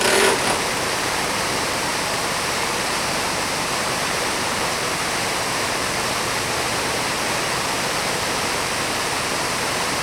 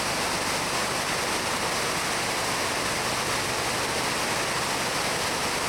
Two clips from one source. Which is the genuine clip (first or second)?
second